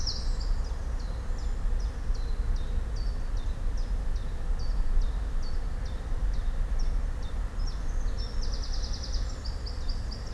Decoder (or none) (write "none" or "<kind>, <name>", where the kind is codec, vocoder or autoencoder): none